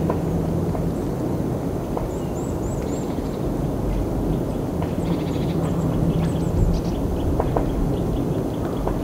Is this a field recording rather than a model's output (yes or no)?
yes